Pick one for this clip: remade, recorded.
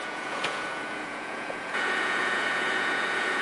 remade